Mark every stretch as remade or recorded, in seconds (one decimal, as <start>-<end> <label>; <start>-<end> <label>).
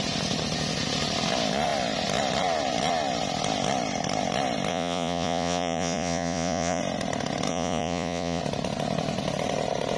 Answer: 0.0-4.7 recorded; 4.7-6.8 remade; 6.8-7.5 recorded; 7.5-8.4 remade; 8.4-10.0 recorded